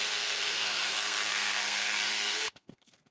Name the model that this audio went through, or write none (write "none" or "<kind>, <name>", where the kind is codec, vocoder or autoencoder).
codec, SNAC